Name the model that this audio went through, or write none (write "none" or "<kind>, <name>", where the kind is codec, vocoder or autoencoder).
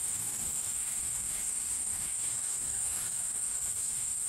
codec, DAC